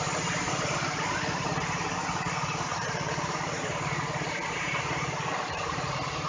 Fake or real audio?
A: fake